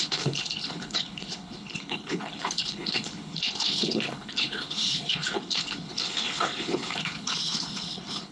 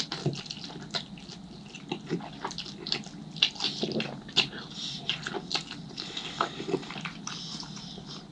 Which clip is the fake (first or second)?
first